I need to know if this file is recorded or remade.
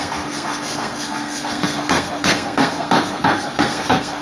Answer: remade